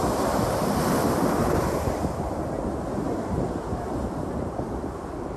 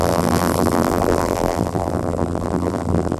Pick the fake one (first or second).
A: second